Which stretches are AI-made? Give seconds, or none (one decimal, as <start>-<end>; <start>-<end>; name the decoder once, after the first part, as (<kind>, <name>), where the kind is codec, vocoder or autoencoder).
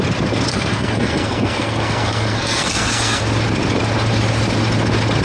0.5-3.2 (codec, SNAC)